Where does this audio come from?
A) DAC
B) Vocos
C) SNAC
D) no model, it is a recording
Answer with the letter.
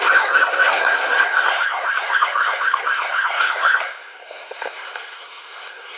C